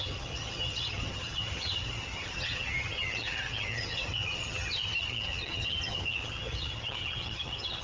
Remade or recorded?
remade